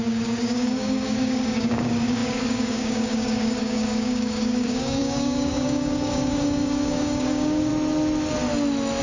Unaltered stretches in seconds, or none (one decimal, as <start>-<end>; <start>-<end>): 7.7-9.0